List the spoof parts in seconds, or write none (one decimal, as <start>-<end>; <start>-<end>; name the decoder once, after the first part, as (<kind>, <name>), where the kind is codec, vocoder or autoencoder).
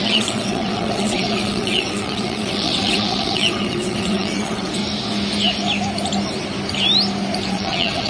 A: 0.0-4.8 (vocoder, WaveNeXt); 7.5-8.1